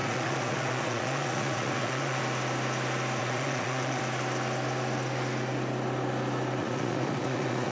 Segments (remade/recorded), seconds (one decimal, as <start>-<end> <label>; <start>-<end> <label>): 0.0-2.2 remade; 2.2-3.2 recorded; 3.2-4.0 remade; 4.0-6.6 recorded; 6.6-7.7 remade